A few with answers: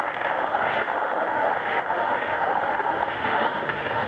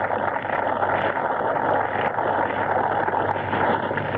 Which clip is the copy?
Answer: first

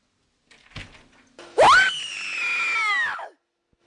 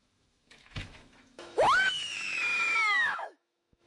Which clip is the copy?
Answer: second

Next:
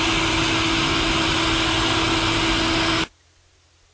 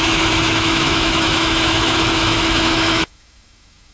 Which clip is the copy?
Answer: second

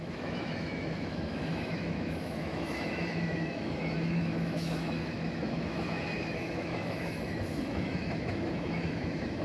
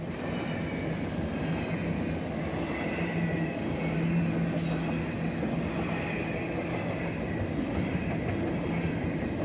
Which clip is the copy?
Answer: first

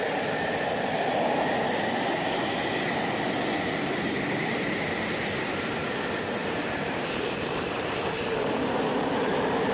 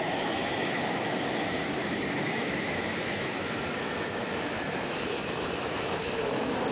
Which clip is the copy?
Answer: second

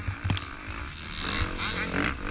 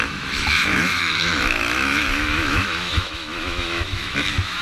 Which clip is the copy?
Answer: second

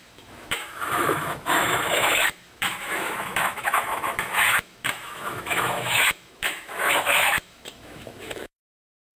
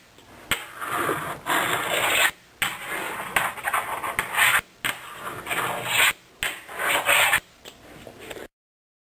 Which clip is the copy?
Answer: first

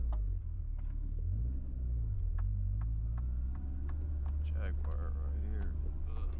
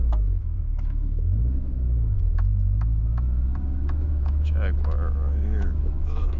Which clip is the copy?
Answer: second